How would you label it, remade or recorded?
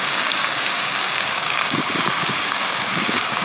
remade